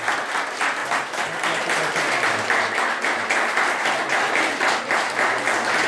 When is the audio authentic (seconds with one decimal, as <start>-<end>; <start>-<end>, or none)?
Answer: 0.0-5.9